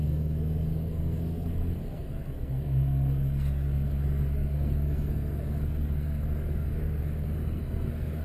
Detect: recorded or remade remade